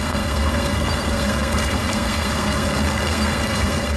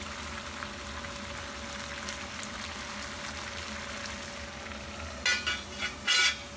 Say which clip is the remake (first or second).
first